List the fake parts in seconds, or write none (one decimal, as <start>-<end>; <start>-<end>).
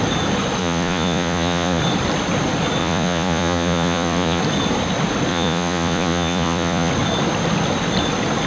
0.6-1.8; 2.8-4.4; 5.3-6.9